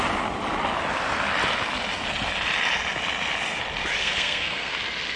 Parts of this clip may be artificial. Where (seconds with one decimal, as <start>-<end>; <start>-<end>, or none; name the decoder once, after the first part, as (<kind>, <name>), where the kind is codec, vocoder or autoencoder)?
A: 4.0-4.7 (codec, SNAC)